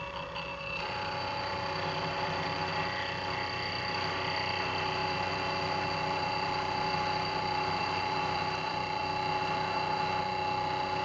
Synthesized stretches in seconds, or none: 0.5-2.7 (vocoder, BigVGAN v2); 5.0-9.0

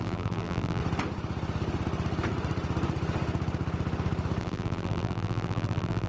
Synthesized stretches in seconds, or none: 0.0-0.8 (vocoder, BigVGAN v2); 4.4-6.1

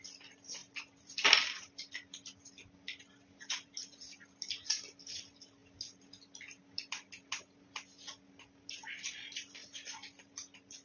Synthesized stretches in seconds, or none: 0.6-3.0 (vocoder, BigVGAN v2); 9.6-10.2

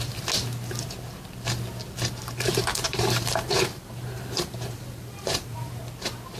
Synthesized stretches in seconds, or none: 2.5-5.8 (vocoder, BigVGAN v2)

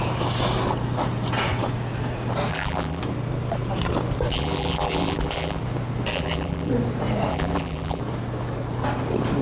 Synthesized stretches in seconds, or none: 2.5-3.0 (vocoder, BigVGAN v2); 4.3-5.6; 6.1-6.7; 7.3-8.0